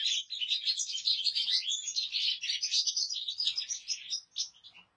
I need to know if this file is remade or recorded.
recorded